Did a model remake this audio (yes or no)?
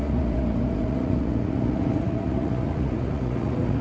yes